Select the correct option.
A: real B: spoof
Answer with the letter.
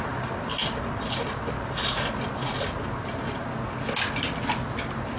A